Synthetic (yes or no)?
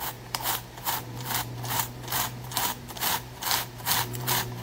yes